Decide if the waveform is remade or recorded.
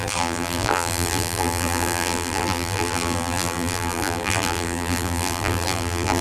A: remade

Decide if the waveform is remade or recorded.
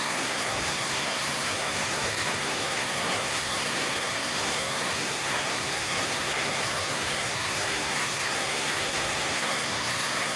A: remade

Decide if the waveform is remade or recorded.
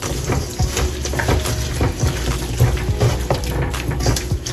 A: recorded